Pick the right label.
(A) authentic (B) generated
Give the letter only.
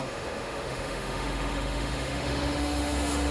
B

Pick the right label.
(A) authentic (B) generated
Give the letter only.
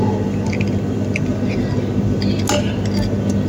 A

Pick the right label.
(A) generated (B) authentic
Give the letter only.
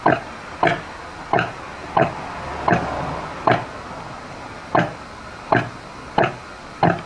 B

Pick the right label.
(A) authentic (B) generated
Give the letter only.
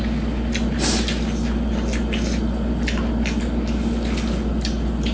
A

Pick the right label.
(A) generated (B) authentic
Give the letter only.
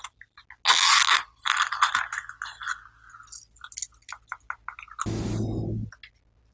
B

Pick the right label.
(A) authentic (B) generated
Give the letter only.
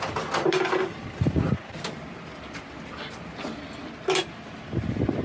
A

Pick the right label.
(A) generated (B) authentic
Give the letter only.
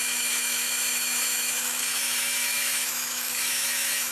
A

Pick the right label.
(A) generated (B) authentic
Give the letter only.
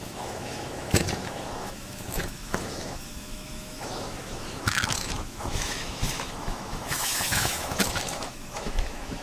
A